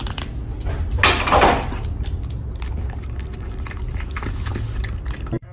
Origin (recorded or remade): recorded